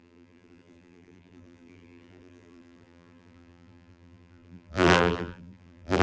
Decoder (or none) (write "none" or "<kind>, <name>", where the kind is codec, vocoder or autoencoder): vocoder, BigVGAN v2